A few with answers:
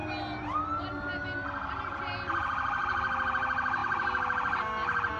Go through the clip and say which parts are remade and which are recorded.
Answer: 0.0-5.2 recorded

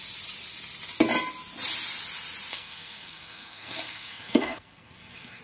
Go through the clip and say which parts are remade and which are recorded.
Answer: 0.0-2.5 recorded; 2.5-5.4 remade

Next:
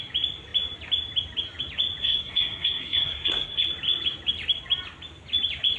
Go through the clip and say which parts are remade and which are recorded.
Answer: 0.0-2.0 recorded; 2.0-3.6 remade; 3.6-5.8 recorded

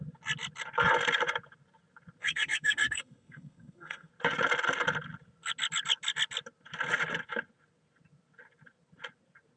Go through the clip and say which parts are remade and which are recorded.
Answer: 0.0-2.2 recorded; 2.2-4.1 remade; 4.1-9.6 recorded

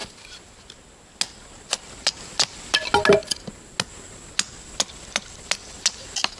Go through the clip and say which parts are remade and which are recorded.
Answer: 0.0-6.4 recorded

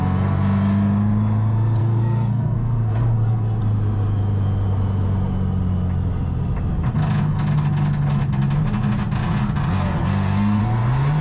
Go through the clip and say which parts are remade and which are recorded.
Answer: 0.0-1.8 recorded; 1.8-3.6 remade; 3.6-10.0 recorded; 10.0-10.6 remade; 10.6-11.2 recorded

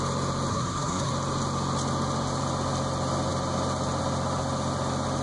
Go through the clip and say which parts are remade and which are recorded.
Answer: 0.0-0.5 recorded; 0.5-1.1 remade; 1.1-5.2 recorded